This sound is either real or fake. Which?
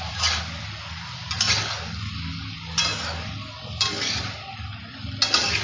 real